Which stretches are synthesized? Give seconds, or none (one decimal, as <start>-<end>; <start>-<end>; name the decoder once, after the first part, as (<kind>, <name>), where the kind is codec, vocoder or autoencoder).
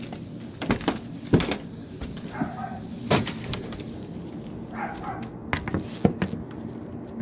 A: 1.8-4.3 (vocoder, BigVGAN v2)